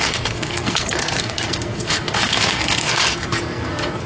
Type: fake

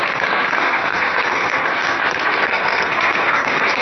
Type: fake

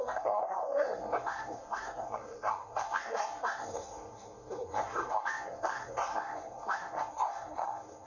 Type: fake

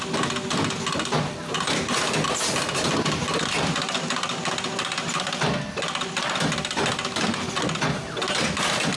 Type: real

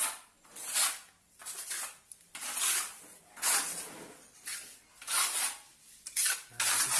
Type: real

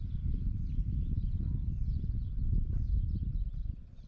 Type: real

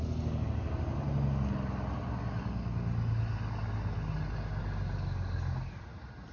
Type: real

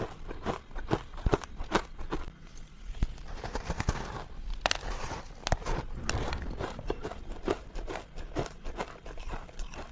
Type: real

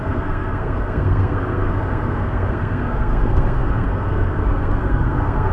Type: fake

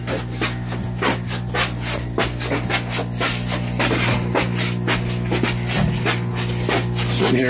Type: real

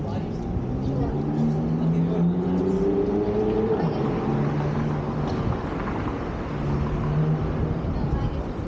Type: real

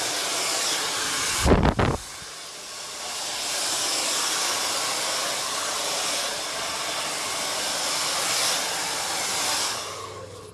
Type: real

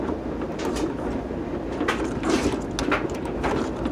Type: real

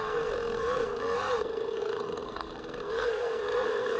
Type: fake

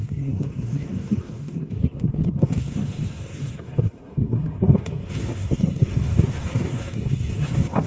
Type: fake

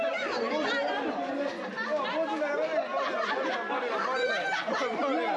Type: real